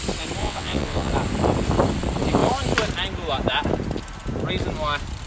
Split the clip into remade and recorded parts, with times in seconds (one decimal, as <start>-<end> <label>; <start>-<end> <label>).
0.0-0.4 recorded; 0.4-1.1 remade; 1.1-5.3 recorded